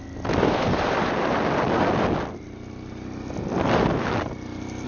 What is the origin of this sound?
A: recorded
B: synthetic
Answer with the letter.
A